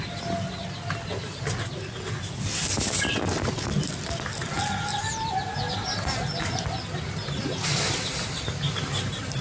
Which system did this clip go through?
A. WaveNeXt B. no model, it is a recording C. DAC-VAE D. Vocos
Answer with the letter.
B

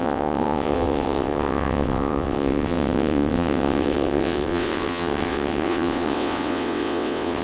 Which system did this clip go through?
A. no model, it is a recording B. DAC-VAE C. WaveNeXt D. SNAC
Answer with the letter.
C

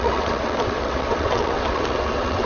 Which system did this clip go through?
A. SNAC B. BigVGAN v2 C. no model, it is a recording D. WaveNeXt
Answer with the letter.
D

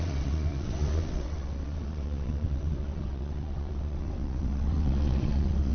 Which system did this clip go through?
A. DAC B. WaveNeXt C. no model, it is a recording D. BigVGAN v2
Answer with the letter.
B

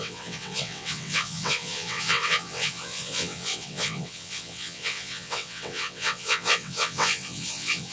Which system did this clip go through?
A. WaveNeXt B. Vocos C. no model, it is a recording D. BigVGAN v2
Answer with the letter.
A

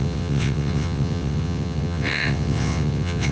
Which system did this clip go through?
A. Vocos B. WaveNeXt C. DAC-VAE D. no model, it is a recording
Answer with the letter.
B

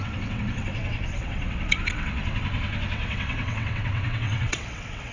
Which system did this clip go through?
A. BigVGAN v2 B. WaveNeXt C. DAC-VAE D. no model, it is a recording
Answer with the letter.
B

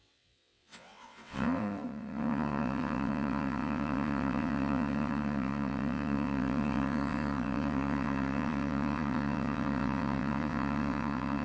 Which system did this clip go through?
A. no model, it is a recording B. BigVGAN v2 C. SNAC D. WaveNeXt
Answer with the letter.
D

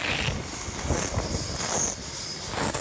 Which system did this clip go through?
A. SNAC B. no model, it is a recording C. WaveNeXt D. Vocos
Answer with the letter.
B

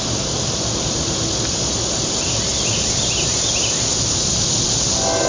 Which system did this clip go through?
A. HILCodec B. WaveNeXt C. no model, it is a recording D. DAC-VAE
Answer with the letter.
C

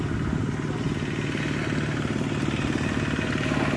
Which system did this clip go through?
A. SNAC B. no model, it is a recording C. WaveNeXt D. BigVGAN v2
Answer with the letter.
B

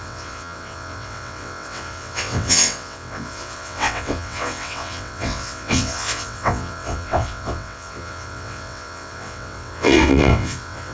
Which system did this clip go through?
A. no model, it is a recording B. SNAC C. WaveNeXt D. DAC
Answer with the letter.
C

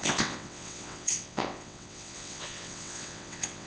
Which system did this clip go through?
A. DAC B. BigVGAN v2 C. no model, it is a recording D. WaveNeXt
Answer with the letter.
D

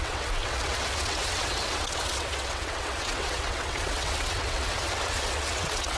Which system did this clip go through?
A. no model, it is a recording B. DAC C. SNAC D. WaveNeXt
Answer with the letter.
D